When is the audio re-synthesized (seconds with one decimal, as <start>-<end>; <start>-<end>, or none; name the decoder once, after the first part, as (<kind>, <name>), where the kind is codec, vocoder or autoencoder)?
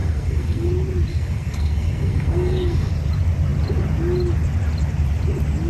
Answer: 0.0-0.7 (codec, SNAC); 1.1-2.9